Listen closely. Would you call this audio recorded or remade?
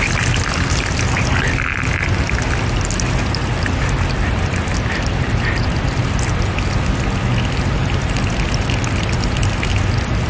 recorded